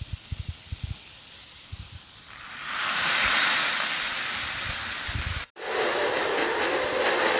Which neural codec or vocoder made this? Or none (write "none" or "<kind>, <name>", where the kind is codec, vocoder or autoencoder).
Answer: none